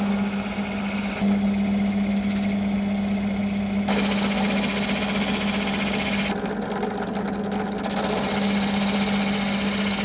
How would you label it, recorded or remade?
recorded